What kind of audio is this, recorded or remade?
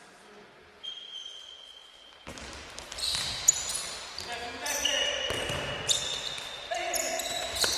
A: recorded